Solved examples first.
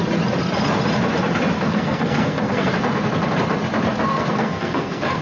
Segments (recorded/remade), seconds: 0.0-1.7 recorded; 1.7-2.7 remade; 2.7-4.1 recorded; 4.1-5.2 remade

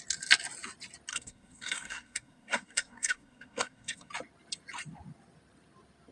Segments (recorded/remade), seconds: 0.0-1.1 recorded; 1.1-4.1 remade; 4.1-6.1 recorded

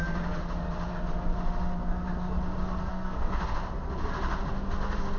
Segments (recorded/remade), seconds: 0.0-2.9 recorded; 2.9-3.4 remade; 3.4-5.2 recorded

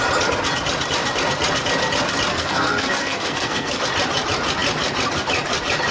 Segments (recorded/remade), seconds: 0.0-2.3 recorded; 2.3-3.8 remade; 3.8-5.9 recorded

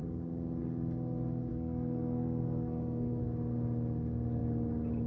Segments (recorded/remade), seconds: 0.0-1.5 recorded; 1.5-3.2 remade; 3.2-5.1 recorded

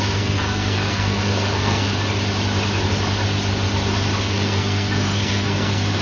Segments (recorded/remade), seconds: 0.0-1.9 remade; 1.9-4.2 recorded; 4.2-6.0 remade